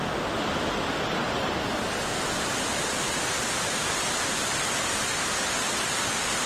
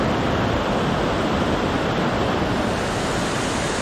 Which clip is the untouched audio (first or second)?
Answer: first